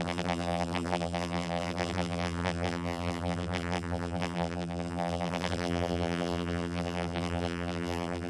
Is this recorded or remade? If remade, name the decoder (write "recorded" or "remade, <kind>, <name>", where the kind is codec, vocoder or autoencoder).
remade, vocoder, BigVGAN v2